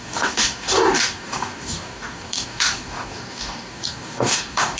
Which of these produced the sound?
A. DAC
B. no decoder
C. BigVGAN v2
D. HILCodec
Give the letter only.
A